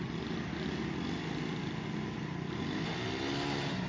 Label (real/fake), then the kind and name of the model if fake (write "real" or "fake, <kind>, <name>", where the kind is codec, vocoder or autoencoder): real